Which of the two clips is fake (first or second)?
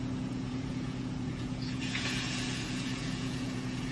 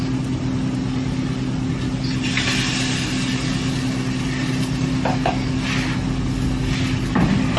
first